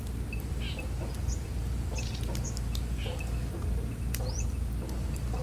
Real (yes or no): yes